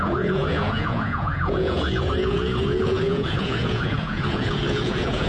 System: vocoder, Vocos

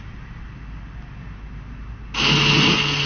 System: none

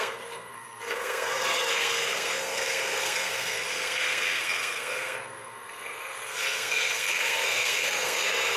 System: codec, SNAC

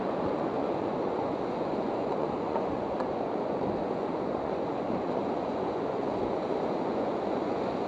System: vocoder, Vocos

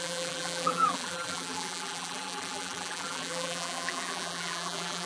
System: vocoder, BigVGAN v2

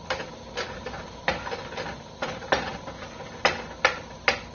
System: none